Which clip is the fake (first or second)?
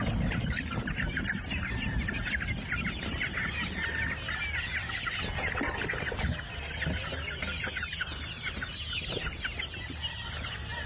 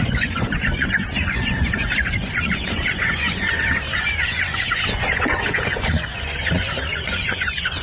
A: second